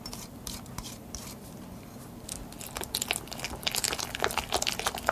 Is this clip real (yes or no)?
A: yes